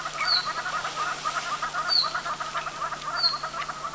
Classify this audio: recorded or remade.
recorded